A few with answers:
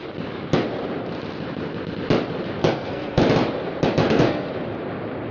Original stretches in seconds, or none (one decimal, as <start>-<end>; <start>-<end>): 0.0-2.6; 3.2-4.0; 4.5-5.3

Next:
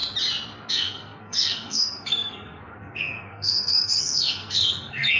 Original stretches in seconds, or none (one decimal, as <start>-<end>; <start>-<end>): 0.0-0.7

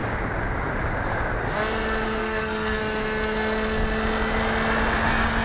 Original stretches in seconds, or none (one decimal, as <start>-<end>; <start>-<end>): 0.0-2.2; 2.8-5.4